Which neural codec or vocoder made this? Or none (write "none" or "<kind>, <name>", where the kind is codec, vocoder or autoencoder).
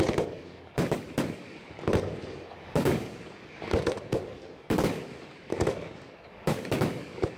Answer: codec, DAC